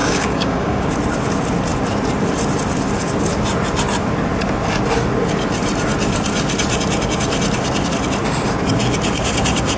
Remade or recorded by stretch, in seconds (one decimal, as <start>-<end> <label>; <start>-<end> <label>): 0.0-0.9 remade; 0.9-9.8 recorded